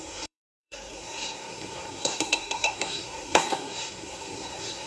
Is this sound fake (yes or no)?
yes